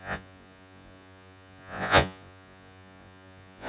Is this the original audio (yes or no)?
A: no